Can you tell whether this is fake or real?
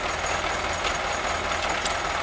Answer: real